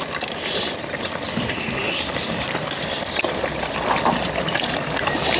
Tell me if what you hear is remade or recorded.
recorded